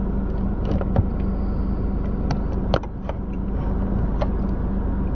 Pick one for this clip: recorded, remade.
recorded